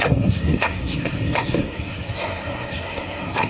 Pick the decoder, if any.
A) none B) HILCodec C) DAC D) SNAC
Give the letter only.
D